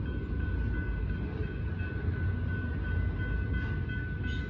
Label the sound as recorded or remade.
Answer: recorded